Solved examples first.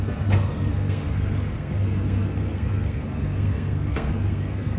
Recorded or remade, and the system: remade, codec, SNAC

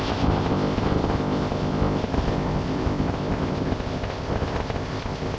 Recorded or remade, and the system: remade, codec, ZipCodec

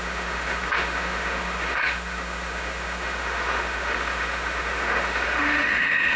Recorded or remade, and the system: remade, autoencoder, DAC-VAE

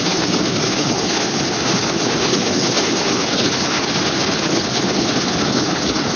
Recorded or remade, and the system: remade, codec, HILCodec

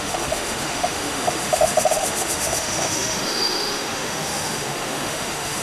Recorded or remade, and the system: remade, autoencoder, DAC-VAE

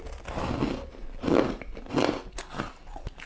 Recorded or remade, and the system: recorded